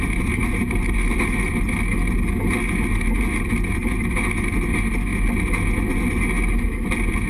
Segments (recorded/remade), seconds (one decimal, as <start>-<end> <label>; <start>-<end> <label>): 0.0-7.3 recorded